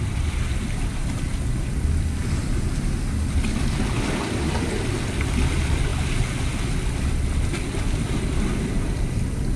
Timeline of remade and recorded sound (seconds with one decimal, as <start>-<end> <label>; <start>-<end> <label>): 0.0-9.6 recorded